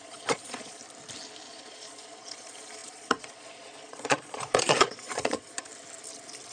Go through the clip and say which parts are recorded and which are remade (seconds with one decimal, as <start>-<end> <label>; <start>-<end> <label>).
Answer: 0.0-0.8 remade; 0.8-1.5 recorded; 1.5-5.7 remade; 5.7-6.5 recorded